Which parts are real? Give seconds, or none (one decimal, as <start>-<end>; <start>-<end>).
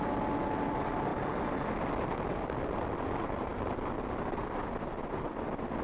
0.0-1.1; 1.8-5.8